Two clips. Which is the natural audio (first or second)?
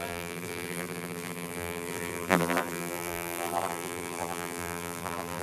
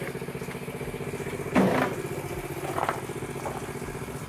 second